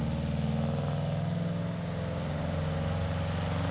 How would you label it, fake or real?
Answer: real